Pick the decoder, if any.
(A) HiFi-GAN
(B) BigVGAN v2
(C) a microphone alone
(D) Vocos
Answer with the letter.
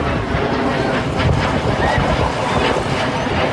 C